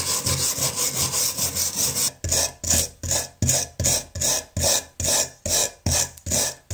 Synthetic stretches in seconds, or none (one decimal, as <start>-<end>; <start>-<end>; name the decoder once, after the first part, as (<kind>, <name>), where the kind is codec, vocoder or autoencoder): none